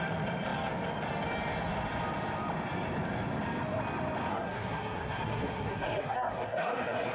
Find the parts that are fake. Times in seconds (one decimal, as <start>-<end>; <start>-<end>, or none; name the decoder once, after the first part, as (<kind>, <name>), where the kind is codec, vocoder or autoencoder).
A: 4.3-7.1 (codec, SNAC)